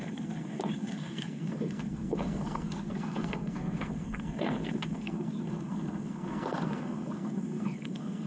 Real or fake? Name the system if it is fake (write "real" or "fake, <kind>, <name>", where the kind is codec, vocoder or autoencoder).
fake, codec, SNAC